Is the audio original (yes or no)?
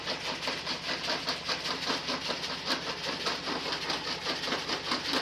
yes